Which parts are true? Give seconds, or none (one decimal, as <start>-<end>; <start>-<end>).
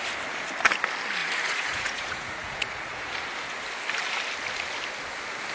0.0-1.2; 3.1-5.5